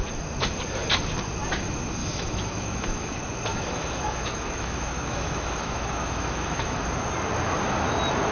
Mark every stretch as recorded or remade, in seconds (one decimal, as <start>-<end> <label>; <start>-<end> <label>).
0.0-2.0 recorded; 2.0-3.1 remade; 3.1-3.5 recorded; 3.5-6.8 remade; 6.8-8.3 recorded